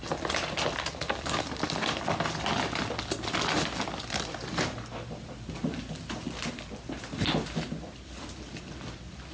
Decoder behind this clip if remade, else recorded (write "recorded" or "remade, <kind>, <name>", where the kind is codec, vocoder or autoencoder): recorded